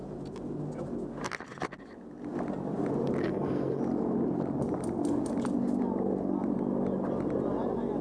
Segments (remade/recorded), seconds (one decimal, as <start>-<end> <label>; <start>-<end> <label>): 0.0-3.2 recorded; 3.2-3.8 remade; 3.8-8.0 recorded